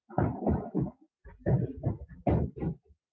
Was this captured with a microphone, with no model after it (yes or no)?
yes